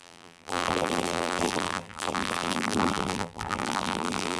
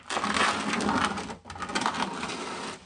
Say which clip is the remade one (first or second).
first